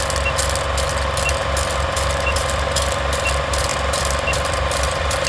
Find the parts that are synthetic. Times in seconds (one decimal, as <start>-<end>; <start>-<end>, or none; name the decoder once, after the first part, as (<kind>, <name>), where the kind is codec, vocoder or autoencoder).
1.4-2.8 (vocoder, BigVGAN v2); 3.7-5.3